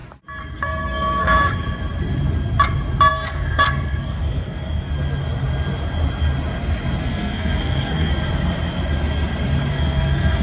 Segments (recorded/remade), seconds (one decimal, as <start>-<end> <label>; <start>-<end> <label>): 0.0-0.5 recorded; 0.5-1.5 remade; 1.5-3.1 recorded; 3.1-4.9 remade; 4.9-7.0 recorded; 7.0-8.1 remade; 8.1-9.7 recorded; 9.7-10.4 remade